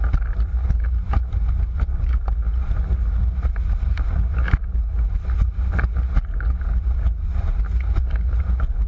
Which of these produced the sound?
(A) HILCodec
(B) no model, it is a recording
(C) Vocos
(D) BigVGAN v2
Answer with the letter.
B